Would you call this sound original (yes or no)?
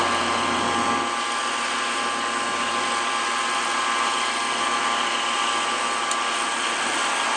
yes